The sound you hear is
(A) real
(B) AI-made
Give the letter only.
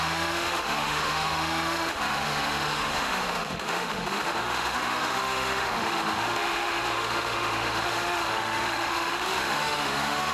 B